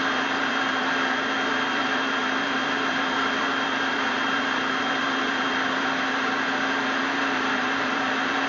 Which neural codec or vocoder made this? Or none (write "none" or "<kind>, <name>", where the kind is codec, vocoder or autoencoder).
vocoder, BigVGAN v2